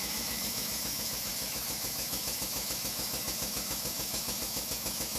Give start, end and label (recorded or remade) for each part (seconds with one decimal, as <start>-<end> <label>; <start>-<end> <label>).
0.0-5.2 remade